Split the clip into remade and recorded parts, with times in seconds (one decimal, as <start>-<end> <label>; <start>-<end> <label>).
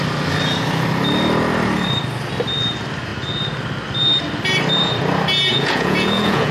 0.0-5.5 recorded; 5.5-6.5 remade